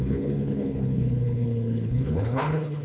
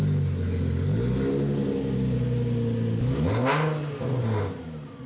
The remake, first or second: first